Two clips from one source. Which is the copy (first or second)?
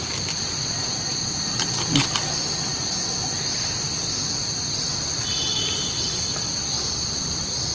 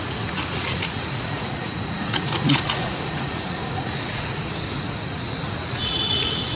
second